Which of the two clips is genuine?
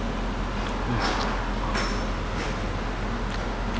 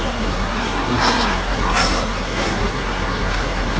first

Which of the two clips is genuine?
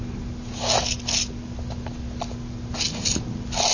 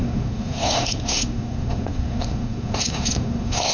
first